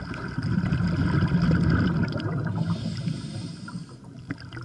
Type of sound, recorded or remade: recorded